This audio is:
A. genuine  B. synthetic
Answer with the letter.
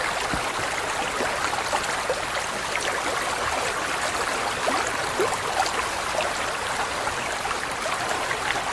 A